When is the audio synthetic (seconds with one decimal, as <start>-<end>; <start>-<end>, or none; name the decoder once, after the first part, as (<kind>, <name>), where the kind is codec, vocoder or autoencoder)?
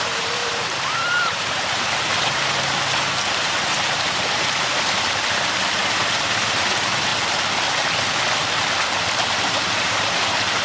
0.0-7.1 (vocoder, BigVGAN v2); 9.5-10.6